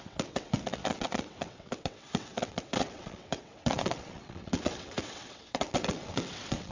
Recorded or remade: remade